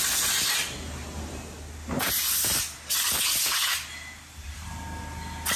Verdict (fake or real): real